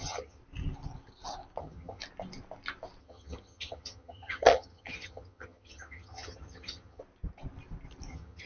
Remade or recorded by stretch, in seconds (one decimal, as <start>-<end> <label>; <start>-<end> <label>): 0.0-0.4 remade; 0.4-1.6 recorded; 1.6-2.0 remade; 2.0-3.0 recorded; 3.0-7.0 remade; 7.0-8.1 recorded; 8.1-8.5 remade